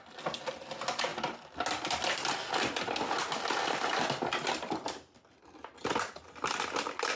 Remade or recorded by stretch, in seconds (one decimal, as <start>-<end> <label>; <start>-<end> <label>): 0.0-7.2 recorded